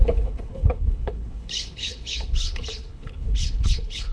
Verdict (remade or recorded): remade